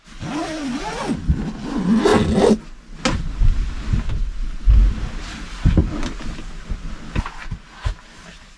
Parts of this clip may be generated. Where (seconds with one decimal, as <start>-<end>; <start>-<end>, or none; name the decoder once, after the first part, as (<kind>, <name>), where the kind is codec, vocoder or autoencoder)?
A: none